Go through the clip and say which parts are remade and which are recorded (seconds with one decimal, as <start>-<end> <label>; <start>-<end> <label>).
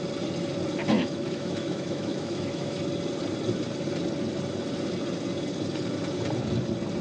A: 0.0-0.8 recorded; 0.8-2.8 remade; 2.8-7.0 recorded